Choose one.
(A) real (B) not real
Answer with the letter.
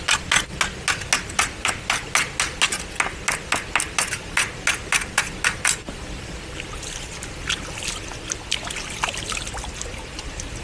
A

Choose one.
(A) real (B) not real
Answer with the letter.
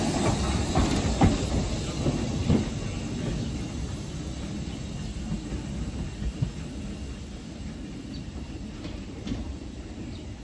A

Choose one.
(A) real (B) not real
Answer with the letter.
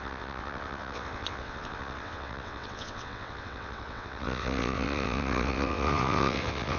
B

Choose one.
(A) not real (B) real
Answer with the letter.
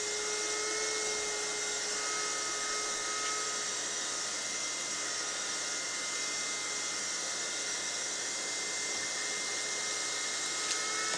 B